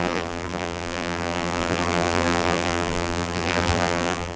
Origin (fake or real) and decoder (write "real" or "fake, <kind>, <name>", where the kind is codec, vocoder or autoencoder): fake, vocoder, BigVGAN v2